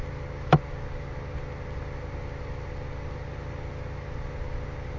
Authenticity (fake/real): real